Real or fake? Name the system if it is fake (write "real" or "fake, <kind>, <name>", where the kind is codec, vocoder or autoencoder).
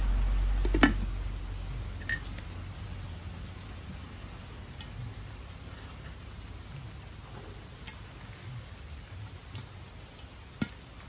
real